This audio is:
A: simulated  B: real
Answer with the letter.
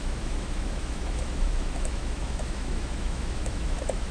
A